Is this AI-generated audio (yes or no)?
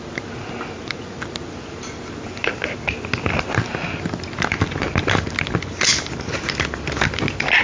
no